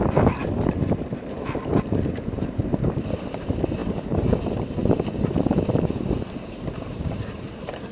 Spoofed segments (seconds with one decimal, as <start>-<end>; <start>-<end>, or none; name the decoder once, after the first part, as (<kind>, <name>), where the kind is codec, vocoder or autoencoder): 0.0-1.7 (vocoder, BigVGAN v2); 3.3-7.9